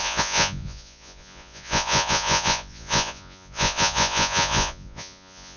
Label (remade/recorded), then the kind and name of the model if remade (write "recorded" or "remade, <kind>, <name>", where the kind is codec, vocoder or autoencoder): remade, vocoder, Vocos